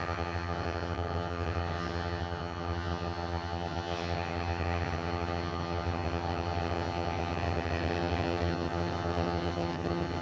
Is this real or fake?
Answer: fake